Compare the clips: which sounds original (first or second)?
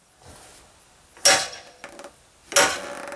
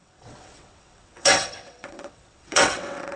first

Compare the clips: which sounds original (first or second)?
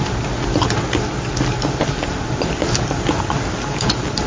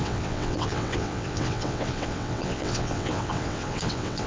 first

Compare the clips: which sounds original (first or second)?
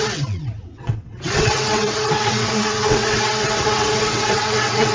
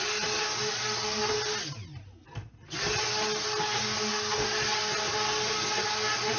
second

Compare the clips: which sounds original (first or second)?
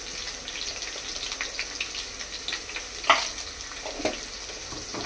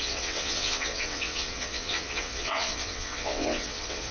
first